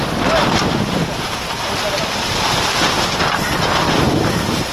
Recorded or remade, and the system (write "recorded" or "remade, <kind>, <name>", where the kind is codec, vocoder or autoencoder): recorded